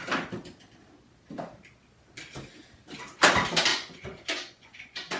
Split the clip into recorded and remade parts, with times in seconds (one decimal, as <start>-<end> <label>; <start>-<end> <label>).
0.0-3.7 recorded; 3.7-5.2 remade